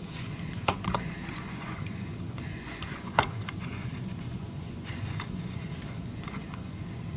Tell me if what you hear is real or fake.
fake